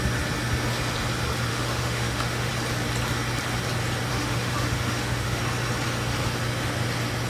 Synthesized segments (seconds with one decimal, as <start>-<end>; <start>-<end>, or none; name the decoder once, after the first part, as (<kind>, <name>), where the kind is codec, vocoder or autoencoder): 1.5-2.5 (autoencoder, DAC-VAE); 4.1-5.4

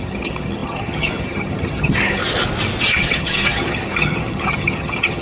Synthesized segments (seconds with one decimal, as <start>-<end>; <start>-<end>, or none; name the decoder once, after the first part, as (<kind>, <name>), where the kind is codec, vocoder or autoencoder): 0.0-2.2 (vocoder, HiFi-GAN); 2.8-5.2